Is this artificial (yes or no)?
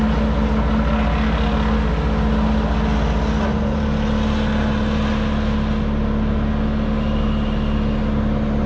no